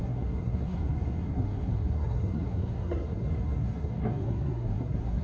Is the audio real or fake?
fake